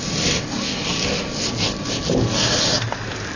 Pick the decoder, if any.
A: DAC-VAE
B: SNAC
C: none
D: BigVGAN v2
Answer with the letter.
C